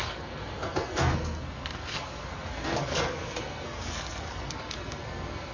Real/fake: fake